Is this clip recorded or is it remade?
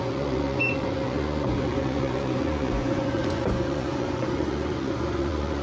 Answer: remade